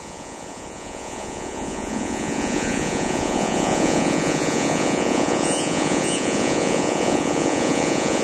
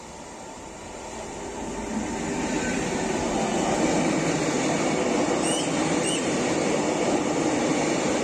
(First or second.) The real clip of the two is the second